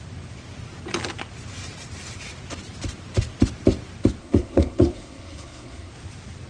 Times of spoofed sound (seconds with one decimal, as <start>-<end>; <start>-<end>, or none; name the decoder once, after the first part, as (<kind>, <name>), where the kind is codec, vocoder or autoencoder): 4.2-5.9 (codec, SNAC)